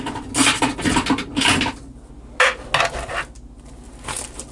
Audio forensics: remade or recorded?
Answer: recorded